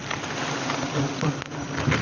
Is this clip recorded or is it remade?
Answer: recorded